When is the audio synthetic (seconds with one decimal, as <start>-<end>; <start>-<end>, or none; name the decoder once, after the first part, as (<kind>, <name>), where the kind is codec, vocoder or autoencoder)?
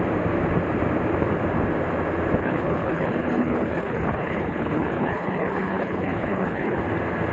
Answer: 2.4-6.8 (codec, HILCodec)